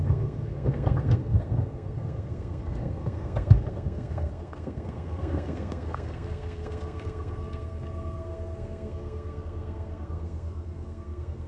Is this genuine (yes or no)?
no